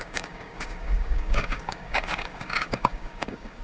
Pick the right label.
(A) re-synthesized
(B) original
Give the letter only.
A